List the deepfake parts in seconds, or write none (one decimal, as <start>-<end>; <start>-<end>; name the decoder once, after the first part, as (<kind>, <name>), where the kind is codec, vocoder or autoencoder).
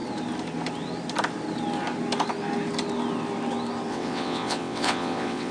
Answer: 3.9-5.5 (vocoder, WaveNeXt)